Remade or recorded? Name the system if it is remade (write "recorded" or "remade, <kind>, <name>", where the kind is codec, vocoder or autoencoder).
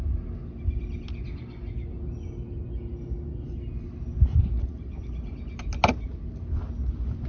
recorded